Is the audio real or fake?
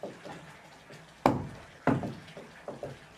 real